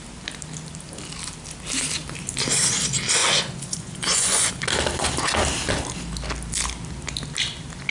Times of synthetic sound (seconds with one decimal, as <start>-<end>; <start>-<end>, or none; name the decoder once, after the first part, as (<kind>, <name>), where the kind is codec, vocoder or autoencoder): 3.2-4.6 (vocoder, Vocos)

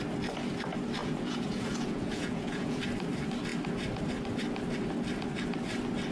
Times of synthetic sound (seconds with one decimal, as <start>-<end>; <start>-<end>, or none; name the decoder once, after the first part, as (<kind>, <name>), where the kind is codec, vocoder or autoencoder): 1.0-2.8 (vocoder, Vocos)

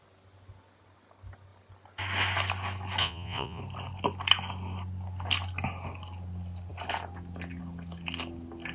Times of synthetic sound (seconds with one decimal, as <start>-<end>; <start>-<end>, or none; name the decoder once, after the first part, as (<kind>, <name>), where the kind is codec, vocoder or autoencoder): 3.0-3.6 (vocoder, Vocos)